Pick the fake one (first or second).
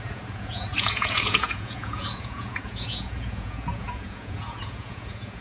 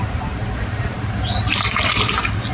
first